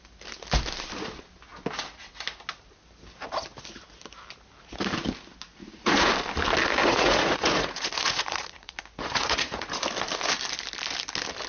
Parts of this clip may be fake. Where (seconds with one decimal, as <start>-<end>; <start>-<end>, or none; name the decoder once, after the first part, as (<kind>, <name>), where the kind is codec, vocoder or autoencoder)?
5.6-6.1 (vocoder, Vocos); 6.8-9.8

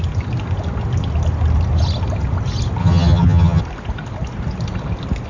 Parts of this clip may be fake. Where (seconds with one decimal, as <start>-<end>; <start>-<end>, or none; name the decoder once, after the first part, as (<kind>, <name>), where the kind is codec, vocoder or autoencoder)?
2.8-3.6 (vocoder, HiFi-GAN)

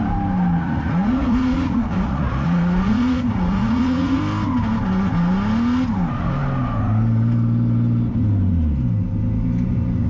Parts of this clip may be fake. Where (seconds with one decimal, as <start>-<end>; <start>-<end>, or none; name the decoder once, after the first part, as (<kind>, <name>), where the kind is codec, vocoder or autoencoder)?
0.6-4.2 (vocoder, Vocos)

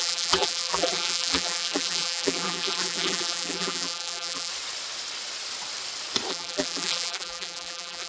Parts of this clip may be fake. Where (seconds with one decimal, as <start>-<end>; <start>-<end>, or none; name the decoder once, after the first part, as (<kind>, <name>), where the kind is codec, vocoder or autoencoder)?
0.0-4.5 (vocoder, BigVGAN v2); 6.3-8.1

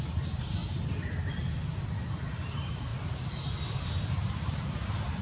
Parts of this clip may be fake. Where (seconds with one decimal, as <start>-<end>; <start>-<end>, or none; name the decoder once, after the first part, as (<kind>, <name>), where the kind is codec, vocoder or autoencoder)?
0.0-0.6 (vocoder, BigVGAN v2); 2.0-5.2

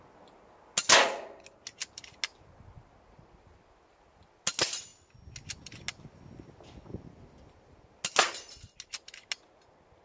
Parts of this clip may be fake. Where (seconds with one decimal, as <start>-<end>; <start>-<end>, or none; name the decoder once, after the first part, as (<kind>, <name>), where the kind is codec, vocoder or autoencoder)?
none

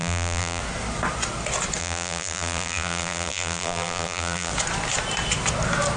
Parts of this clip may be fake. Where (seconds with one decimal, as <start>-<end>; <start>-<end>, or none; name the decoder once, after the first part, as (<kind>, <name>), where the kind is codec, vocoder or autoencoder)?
0.0-0.6 (vocoder, BigVGAN v2); 1.8-4.5

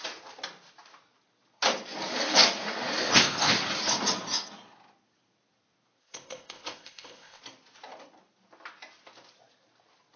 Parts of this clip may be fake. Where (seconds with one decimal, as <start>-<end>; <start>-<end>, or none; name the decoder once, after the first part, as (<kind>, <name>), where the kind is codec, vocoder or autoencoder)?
3.0-3.5 (codec, ZipCodec); 6.0-7.4